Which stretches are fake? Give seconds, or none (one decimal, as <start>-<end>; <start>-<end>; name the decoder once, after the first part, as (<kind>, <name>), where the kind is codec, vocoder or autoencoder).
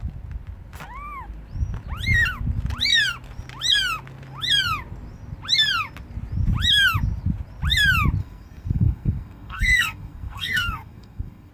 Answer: 8.2-11.5 (codec, SNAC)